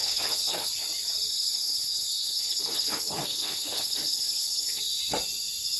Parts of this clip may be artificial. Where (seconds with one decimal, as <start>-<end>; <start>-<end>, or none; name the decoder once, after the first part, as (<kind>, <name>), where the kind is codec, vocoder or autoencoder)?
0.0-0.7 (codec, HILCodec); 1.3-4.8